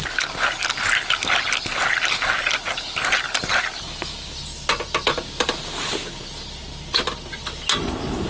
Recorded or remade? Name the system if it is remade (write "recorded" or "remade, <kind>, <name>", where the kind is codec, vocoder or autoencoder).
recorded